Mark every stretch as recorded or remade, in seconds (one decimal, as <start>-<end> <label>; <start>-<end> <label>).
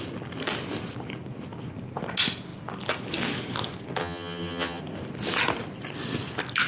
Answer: 0.0-4.0 recorded; 4.0-4.8 remade; 4.8-6.7 recorded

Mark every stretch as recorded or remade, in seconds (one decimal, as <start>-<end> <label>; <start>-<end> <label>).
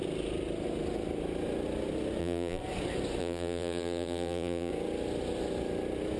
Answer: 0.0-2.2 recorded; 2.2-2.6 remade; 2.6-3.2 recorded; 3.2-4.7 remade; 4.7-6.2 recorded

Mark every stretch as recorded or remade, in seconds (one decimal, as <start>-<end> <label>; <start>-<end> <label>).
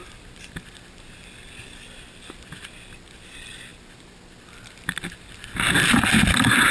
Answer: 0.0-6.7 recorded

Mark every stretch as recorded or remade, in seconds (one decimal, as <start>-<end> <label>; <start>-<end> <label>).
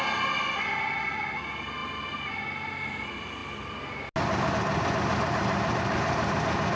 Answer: 0.0-5.4 recorded; 5.4-5.9 remade; 5.9-6.8 recorded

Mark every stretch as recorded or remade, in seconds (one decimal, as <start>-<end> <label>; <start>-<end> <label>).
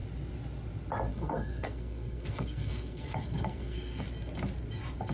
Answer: 0.0-1.1 recorded; 1.1-4.0 remade; 4.0-5.1 recorded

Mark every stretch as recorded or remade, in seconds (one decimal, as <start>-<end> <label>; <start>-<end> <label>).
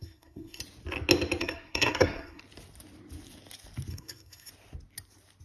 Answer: 0.0-0.6 remade; 0.6-1.4 recorded; 1.4-2.4 remade; 2.4-3.9 recorded; 3.9-4.5 remade; 4.5-5.4 recorded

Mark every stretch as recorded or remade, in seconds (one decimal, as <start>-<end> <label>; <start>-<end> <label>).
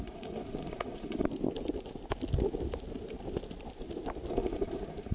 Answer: 0.0-1.2 remade; 1.2-4.3 recorded; 4.3-5.1 remade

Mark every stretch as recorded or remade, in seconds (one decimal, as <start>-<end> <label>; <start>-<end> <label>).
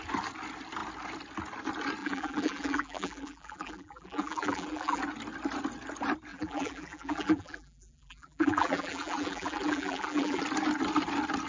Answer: 0.0-2.0 recorded; 2.0-5.0 remade; 5.0-6.3 recorded; 6.3-10.4 remade; 10.4-11.5 recorded